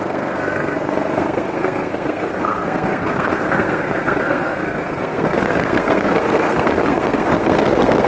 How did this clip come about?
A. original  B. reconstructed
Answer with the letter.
B